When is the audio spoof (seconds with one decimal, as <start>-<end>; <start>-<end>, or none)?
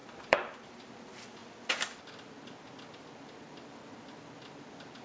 0.0-0.9